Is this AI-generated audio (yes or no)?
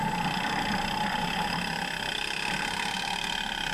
no